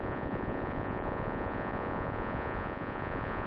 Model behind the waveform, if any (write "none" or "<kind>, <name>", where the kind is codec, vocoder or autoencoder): vocoder, Vocos